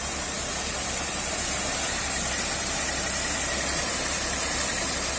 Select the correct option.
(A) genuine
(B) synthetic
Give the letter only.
A